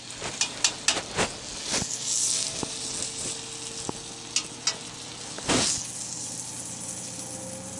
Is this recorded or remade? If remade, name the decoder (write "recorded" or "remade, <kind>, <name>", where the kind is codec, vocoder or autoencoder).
recorded